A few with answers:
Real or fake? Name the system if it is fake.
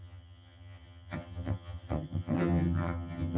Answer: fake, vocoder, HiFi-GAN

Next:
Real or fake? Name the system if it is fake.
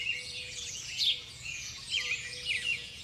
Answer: fake, vocoder, Vocos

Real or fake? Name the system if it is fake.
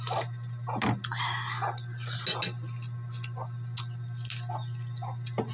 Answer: real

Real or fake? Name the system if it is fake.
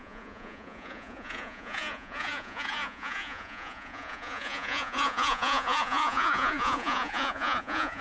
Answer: fake, vocoder, Vocos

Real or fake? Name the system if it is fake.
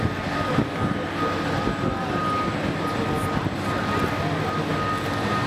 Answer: real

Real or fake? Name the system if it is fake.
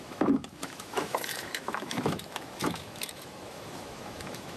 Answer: fake, autoencoder, DAC-VAE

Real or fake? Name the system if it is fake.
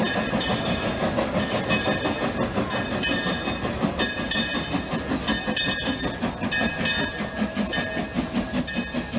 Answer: real